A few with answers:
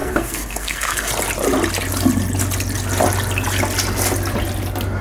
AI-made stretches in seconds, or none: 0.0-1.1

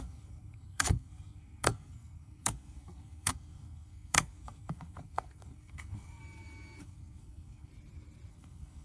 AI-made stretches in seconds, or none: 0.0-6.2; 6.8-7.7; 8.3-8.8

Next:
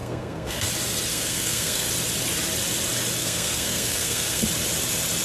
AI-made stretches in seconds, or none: 0.0-0.7; 1.1-1.9; 3.2-4.4

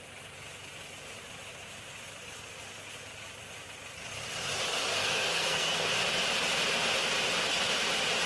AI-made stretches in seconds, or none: 5.0-5.9